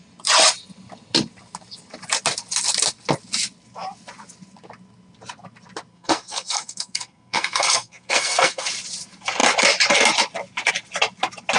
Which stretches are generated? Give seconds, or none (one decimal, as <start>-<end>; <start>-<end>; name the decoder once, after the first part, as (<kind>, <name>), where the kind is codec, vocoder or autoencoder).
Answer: 5.9-8.7 (codec, SNAC)